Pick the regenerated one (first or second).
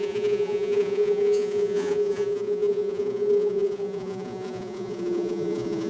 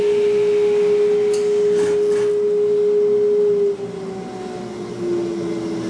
first